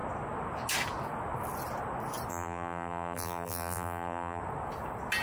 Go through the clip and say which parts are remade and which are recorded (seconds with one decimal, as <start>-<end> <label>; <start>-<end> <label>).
0.0-2.3 recorded; 2.3-4.4 remade; 4.4-5.2 recorded